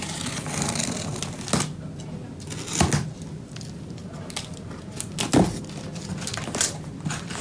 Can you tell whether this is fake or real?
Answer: real